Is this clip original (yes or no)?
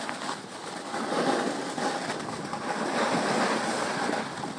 yes